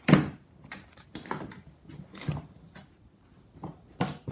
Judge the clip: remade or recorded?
recorded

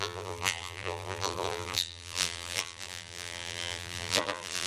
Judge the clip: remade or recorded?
remade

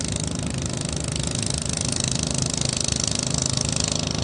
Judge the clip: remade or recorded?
recorded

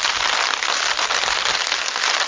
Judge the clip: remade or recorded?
recorded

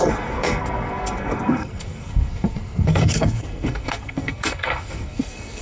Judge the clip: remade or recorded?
remade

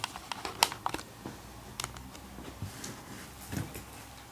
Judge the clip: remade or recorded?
recorded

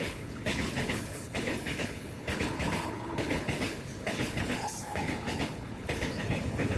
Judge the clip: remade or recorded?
remade